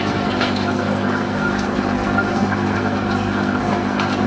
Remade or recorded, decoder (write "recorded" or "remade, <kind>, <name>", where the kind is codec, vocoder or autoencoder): remade, codec, SNAC